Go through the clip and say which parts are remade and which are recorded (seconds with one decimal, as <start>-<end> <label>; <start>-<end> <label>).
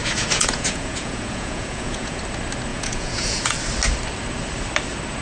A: 0.0-2.2 remade; 2.2-2.7 recorded; 2.7-3.6 remade; 3.6-5.2 recorded